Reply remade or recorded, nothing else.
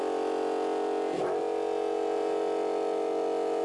recorded